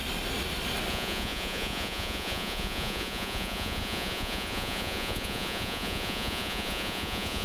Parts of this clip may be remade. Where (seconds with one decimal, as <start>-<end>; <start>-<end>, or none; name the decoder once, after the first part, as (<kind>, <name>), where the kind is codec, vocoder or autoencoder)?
0.9-7.4 (vocoder, Vocos)